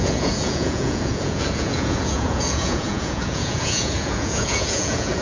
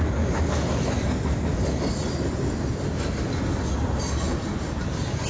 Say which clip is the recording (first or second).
second